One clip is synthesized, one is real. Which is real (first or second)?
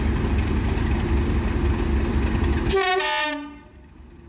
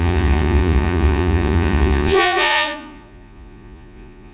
first